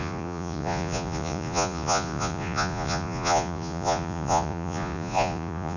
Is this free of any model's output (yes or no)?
no